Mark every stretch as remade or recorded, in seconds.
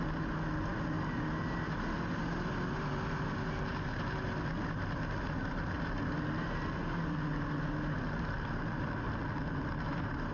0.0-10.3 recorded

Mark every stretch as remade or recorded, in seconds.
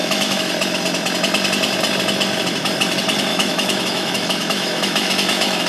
0.0-0.5 remade; 0.5-3.3 recorded; 3.3-5.7 remade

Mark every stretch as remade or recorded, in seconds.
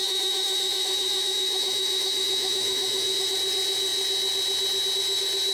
0.0-3.3 remade; 3.3-5.5 recorded